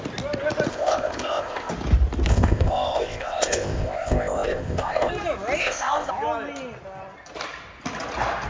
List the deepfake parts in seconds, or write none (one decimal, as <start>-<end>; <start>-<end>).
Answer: 0.7-1.7; 2.3-5.1; 5.6-6.1